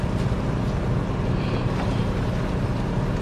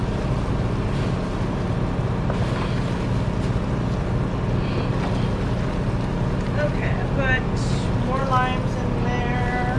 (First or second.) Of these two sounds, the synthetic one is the first